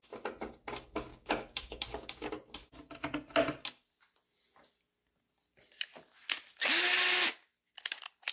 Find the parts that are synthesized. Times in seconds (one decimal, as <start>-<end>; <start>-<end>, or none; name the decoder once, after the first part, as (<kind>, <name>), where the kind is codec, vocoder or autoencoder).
1.1-2.3 (codec, DAC)